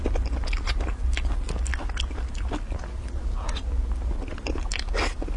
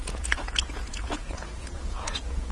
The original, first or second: first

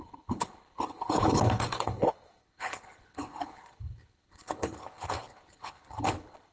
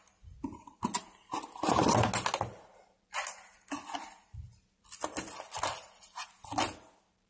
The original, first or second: second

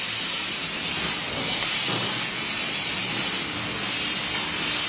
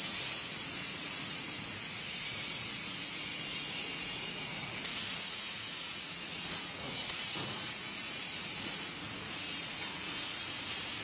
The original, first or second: first